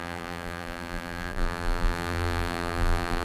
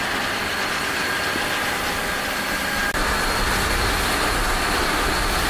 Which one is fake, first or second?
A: first